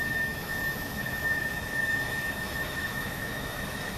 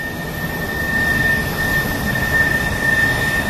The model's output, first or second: first